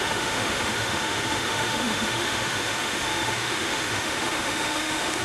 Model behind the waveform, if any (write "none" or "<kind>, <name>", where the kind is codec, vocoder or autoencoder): autoencoder, DAC-VAE